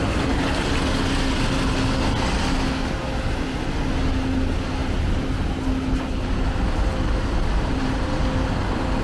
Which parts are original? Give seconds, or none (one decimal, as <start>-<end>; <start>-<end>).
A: 0.0-9.0